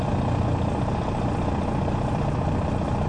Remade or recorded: recorded